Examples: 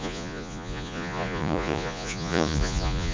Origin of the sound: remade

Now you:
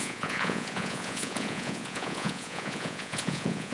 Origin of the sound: remade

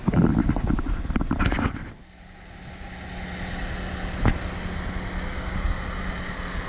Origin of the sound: recorded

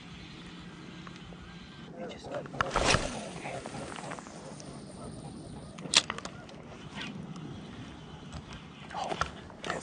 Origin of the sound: recorded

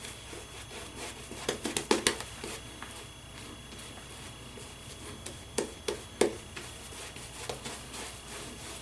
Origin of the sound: recorded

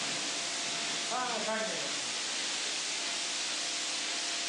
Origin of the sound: recorded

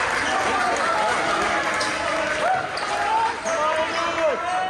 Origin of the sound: recorded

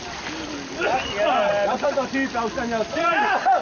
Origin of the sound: recorded